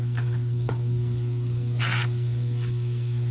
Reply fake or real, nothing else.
fake